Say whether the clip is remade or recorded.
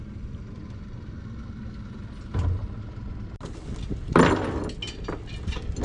recorded